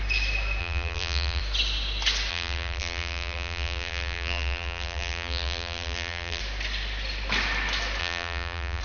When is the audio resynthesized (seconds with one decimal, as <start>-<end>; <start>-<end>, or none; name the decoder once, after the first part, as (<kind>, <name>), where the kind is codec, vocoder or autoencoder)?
0.6-1.4 (vocoder, BigVGAN v2); 2.3-6.4; 8.0-8.8